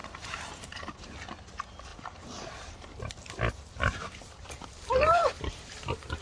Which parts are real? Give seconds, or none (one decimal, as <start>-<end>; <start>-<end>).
0.9-1.9; 5.6-6.2